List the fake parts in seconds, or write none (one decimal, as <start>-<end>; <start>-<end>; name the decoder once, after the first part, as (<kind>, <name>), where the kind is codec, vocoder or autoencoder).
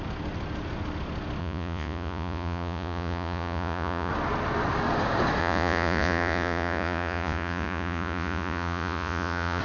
1.4-4.1 (vocoder, Vocos); 5.4-9.6